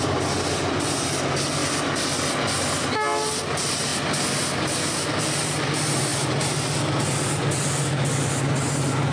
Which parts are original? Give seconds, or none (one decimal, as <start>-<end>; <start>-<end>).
0.0-9.1